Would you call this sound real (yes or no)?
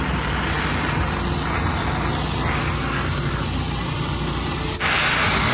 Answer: yes